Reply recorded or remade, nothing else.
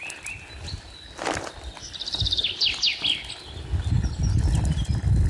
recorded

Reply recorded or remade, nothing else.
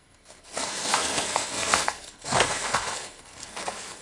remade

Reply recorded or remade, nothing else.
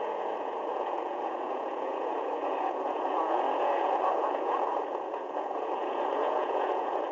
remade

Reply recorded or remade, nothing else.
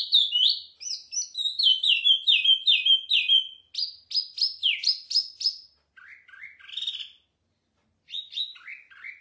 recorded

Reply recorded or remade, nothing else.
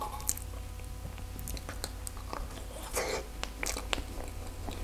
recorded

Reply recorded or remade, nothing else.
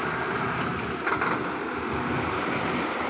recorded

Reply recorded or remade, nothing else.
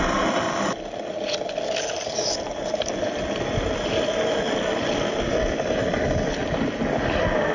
recorded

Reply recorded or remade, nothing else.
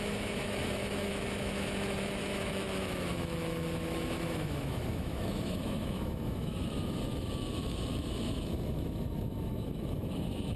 remade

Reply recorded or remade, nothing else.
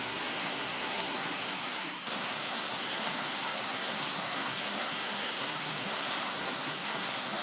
remade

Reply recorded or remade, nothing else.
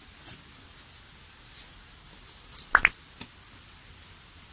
recorded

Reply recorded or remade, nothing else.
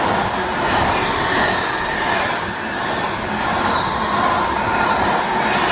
recorded